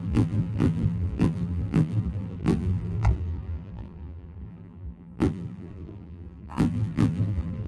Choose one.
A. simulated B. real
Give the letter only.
A